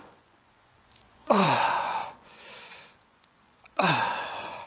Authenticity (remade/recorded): remade